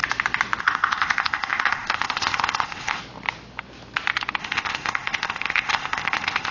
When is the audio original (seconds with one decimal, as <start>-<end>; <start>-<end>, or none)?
0.0-0.6; 3.0-4.4